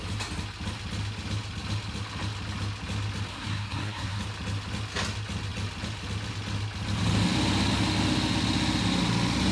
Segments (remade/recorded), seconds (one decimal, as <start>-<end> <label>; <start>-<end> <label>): 0.0-3.3 recorded; 3.3-4.2 remade; 4.2-9.5 recorded